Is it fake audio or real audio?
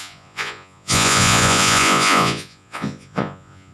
fake